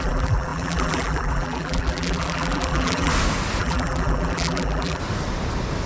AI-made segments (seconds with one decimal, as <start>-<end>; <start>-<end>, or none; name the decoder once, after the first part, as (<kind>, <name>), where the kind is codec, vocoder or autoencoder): 0.0-3.1 (vocoder, BigVGAN v2); 3.6-5.0